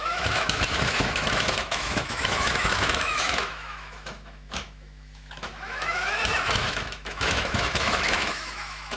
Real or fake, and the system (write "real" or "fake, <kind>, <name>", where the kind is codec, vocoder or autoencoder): fake, autoencoder, DAC-VAE